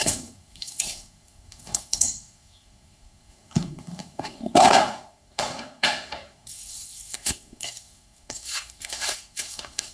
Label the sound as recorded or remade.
remade